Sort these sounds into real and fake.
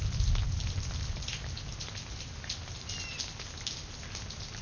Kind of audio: real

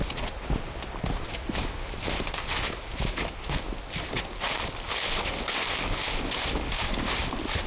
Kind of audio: real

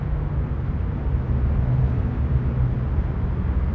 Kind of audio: real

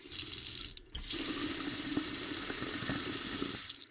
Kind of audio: real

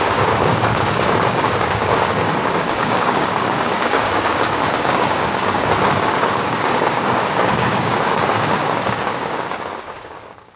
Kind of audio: fake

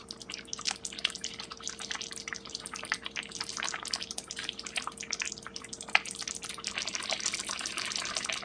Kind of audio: real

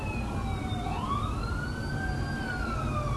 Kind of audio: real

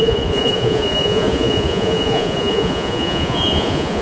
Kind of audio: fake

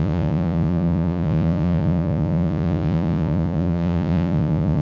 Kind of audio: fake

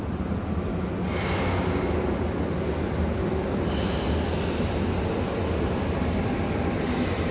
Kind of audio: real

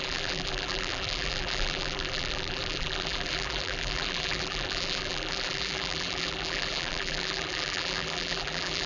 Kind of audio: fake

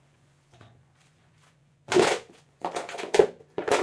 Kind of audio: fake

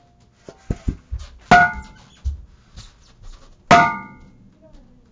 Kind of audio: real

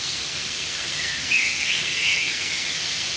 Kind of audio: fake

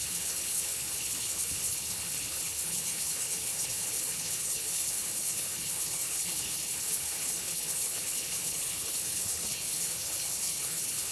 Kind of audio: fake